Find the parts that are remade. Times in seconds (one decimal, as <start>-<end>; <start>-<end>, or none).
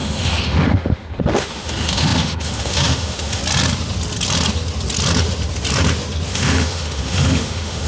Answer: 0.0-3.4; 6.3-7.9